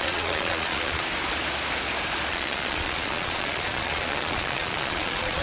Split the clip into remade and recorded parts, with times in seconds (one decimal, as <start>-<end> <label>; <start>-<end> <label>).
0.0-1.0 remade; 1.0-2.3 recorded; 2.3-5.4 remade